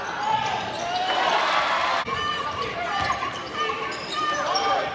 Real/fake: fake